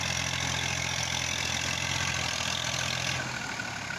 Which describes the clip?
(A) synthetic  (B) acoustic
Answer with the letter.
B